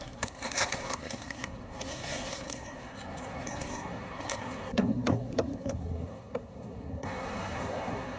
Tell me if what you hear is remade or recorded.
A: remade